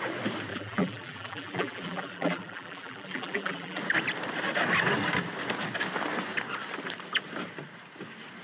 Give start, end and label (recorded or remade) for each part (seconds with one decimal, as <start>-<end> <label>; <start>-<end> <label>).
0.0-0.5 recorded; 0.5-3.8 remade; 3.8-8.4 recorded

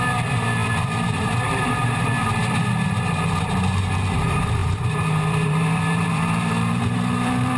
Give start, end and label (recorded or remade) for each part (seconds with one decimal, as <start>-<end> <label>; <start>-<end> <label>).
0.0-7.6 remade

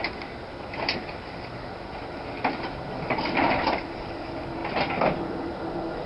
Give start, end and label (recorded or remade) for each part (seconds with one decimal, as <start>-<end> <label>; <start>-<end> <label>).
0.0-3.4 recorded; 3.4-6.1 remade

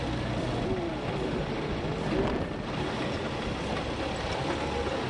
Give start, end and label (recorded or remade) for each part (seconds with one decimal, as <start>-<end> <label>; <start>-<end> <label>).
0.0-5.1 recorded

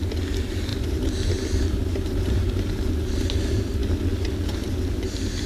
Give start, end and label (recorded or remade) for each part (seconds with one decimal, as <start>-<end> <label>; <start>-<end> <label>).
0.0-0.7 recorded; 0.7-2.8 remade; 2.8-5.5 recorded

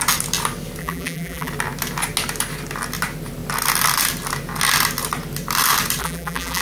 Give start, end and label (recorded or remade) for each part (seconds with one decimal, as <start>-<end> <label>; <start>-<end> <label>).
0.0-0.8 recorded; 0.8-1.5 remade; 1.5-6.0 recorded; 6.0-6.6 remade

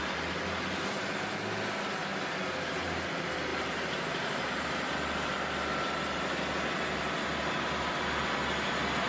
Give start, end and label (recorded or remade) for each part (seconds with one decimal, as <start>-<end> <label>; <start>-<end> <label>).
0.0-3.5 recorded; 3.5-4.9 remade; 4.9-9.1 recorded

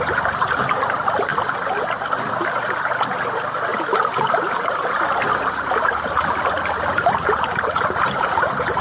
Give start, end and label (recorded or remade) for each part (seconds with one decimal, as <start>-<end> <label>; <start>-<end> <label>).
0.0-8.8 remade